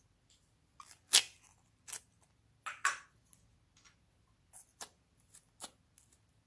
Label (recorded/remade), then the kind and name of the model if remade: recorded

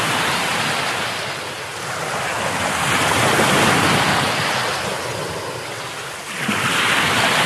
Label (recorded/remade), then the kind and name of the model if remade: recorded